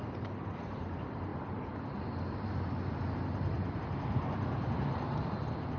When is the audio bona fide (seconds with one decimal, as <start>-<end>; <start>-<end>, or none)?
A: 1.3-3.8